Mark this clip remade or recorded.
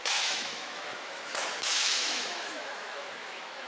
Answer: remade